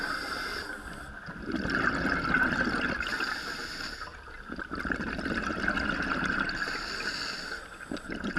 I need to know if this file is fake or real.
real